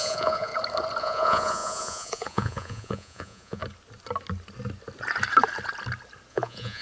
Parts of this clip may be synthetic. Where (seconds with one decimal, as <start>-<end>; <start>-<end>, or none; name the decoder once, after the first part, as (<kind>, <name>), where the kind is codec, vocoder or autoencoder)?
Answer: 0.0-0.5 (vocoder, Vocos); 1.0-3.6; 6.3-6.8